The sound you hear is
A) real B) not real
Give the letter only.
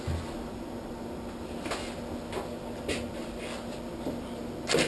A